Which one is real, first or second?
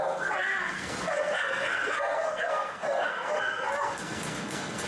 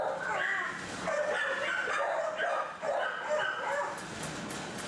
second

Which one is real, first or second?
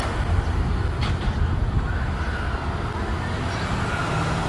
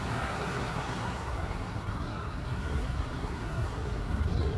first